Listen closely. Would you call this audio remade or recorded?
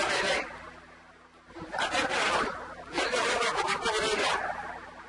recorded